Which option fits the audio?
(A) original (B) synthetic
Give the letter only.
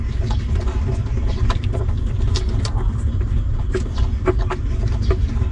A